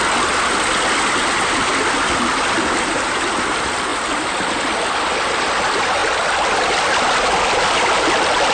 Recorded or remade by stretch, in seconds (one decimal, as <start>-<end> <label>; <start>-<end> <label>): 0.0-8.5 recorded